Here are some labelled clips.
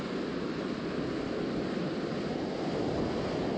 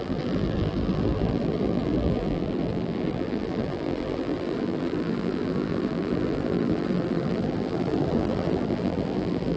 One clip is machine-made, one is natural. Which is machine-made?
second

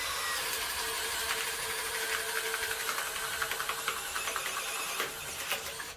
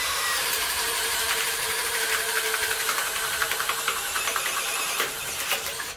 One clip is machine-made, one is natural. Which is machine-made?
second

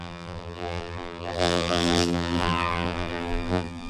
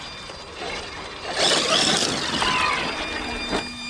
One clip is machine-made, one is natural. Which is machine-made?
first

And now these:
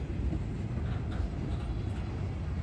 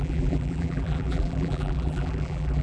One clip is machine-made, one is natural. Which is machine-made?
second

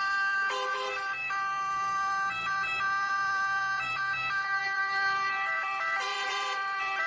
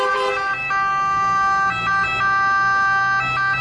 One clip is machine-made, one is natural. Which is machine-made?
first